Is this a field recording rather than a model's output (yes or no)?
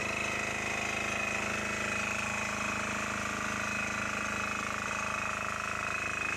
yes